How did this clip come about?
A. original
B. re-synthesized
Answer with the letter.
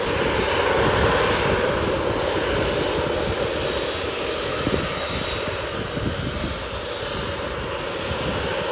A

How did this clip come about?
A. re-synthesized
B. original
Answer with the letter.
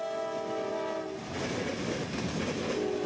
B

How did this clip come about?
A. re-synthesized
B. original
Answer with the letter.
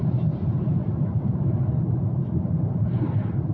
B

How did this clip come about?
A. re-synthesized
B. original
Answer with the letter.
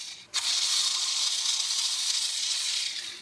A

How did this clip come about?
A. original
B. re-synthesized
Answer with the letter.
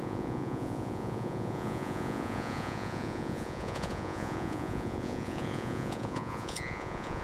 B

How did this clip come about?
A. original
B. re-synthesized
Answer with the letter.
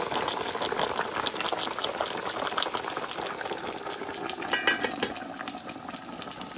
A